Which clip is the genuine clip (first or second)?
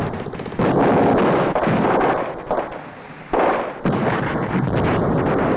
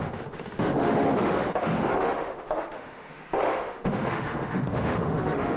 first